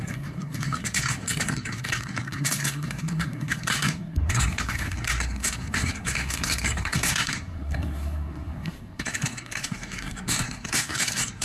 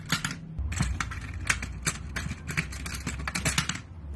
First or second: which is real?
second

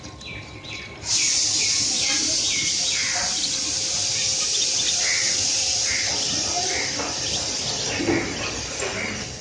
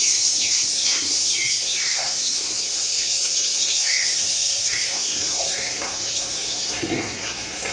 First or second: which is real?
first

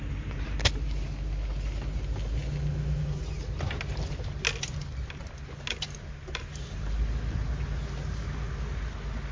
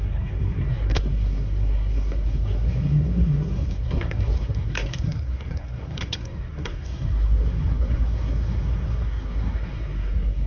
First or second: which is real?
first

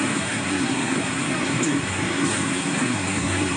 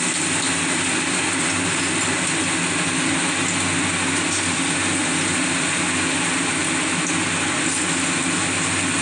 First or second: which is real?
second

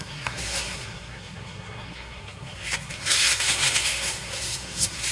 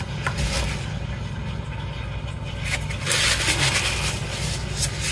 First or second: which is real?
second